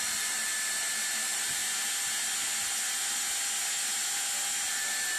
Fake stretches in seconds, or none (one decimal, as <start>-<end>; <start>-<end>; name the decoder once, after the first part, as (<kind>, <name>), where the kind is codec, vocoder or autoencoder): 0.0-0.5 (vocoder, BigVGAN v2); 1.1-1.6; 4.7-5.2